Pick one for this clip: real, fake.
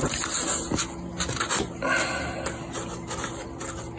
real